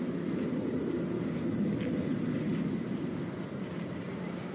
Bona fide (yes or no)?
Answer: yes